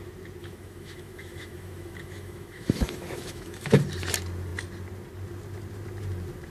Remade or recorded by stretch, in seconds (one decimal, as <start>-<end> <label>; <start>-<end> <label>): 0.0-0.4 recorded; 0.4-3.8 remade; 3.8-6.5 recorded